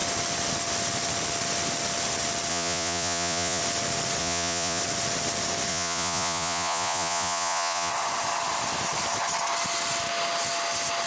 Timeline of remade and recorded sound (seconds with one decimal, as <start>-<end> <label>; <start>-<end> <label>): 0.0-2.5 recorded; 2.5-3.6 remade; 3.6-4.2 recorded; 4.2-4.8 remade; 4.8-5.7 recorded; 5.7-7.9 remade; 7.9-11.1 recorded